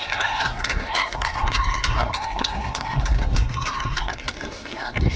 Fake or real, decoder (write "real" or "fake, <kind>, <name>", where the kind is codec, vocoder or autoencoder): fake, codec, SNAC